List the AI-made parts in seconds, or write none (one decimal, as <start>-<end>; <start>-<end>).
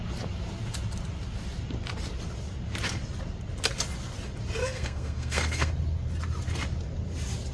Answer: 4.6-5.7